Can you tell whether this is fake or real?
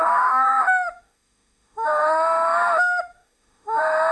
fake